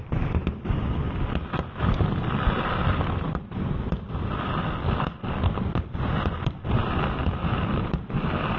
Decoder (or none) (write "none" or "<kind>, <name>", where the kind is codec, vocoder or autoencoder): vocoder, BigVGAN v2